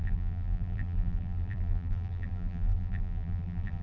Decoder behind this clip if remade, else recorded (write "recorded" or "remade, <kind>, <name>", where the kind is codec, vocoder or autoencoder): remade, vocoder, BigVGAN v2